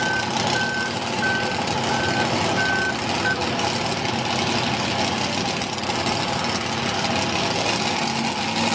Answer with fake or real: real